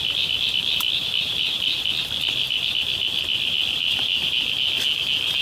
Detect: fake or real real